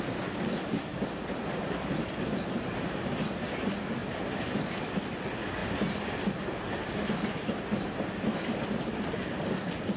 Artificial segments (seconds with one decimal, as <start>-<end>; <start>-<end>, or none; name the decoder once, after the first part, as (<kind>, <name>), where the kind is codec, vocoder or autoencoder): none

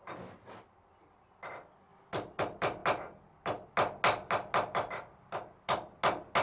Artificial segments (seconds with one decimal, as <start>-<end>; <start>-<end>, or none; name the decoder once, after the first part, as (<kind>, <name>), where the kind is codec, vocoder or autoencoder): none

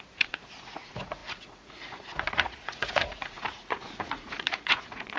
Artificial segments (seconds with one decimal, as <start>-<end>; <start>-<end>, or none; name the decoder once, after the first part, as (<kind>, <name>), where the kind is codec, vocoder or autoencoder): 0.0-5.2 (vocoder, Vocos)

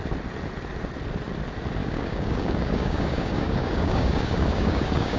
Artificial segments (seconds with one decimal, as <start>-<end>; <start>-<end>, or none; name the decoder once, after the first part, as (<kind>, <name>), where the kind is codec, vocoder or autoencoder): 1.8-5.2 (codec, DAC)